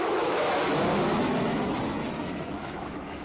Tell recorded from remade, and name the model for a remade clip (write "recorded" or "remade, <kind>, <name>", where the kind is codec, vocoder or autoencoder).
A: remade, autoencoder, DAC-VAE